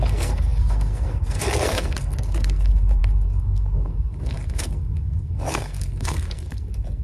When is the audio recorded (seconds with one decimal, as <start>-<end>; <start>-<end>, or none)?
none